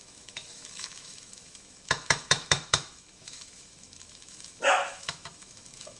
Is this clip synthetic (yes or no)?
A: yes